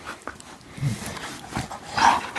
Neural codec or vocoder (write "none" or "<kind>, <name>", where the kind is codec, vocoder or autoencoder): none